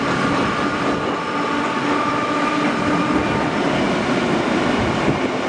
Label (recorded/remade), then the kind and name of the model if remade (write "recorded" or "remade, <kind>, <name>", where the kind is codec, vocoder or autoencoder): recorded